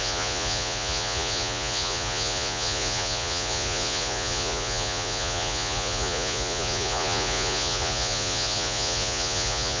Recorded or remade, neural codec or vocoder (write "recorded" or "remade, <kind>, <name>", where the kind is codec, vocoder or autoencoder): remade, vocoder, Vocos